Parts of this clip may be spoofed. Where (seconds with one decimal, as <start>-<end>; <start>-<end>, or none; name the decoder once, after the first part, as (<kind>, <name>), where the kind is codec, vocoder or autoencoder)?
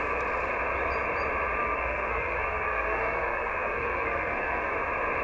1.6-4.7 (codec, SNAC)